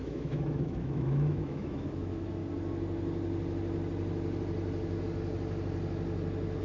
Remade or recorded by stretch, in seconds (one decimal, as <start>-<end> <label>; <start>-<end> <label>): 0.0-2.4 remade; 2.4-6.6 recorded